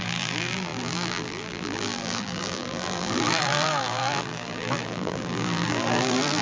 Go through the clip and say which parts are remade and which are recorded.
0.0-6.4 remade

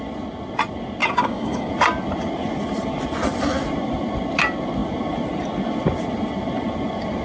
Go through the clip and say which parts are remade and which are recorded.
0.0-1.0 recorded; 1.0-1.7 remade; 1.7-7.2 recorded

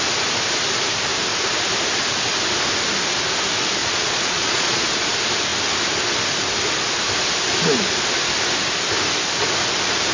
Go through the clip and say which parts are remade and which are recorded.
0.0-3.8 recorded; 3.8-4.9 remade; 4.9-10.1 recorded

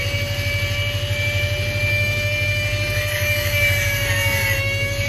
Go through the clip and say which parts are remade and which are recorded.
0.0-1.9 recorded; 1.9-5.1 remade

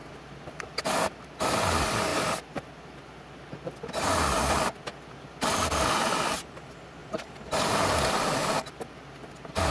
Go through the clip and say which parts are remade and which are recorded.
0.0-0.8 remade; 0.8-2.1 recorded; 2.1-2.7 remade; 2.7-7.0 recorded; 7.0-9.7 remade

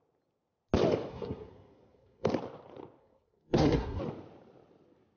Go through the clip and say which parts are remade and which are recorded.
0.0-1.1 recorded; 1.1-2.3 remade; 2.3-3.0 recorded; 3.0-4.0 remade; 4.0-5.2 recorded

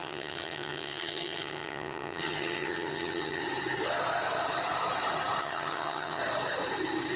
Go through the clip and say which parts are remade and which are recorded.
0.0-3.4 remade; 3.4-5.4 recorded; 5.4-6.2 remade; 6.2-7.2 recorded

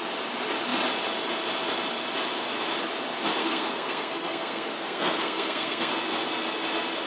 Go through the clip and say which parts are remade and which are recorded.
0.0-3.4 recorded; 3.4-5.9 remade; 5.9-7.1 recorded